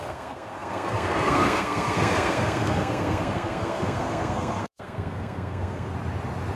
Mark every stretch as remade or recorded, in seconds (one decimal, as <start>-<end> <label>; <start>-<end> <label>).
0.0-5.9 remade; 5.9-6.6 recorded